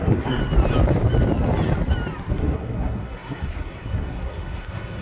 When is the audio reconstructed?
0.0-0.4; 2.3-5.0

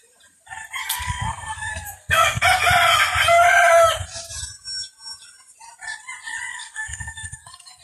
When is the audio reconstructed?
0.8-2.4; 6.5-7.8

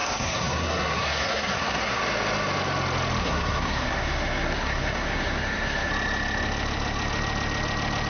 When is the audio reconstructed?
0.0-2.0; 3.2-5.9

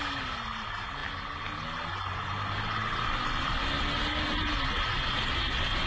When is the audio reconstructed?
none

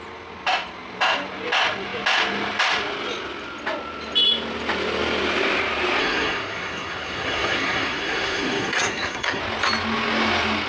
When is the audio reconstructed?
6.0-9.4

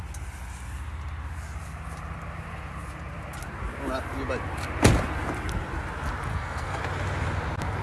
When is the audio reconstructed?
6.3-6.8